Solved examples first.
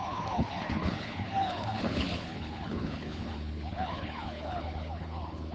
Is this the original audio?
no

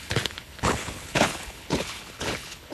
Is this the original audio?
no